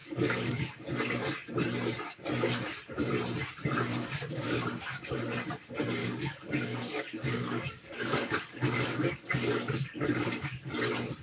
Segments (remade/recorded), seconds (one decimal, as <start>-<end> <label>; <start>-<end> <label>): 0.0-0.7 remade; 0.7-3.9 recorded; 3.9-5.2 remade; 5.2-6.0 recorded; 6.0-10.7 remade; 10.7-11.2 recorded